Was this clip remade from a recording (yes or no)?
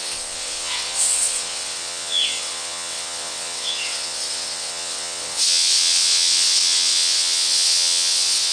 yes